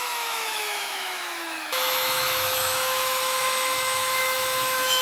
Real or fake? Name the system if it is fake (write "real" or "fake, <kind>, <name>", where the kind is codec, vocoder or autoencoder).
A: fake, autoencoder, DAC-VAE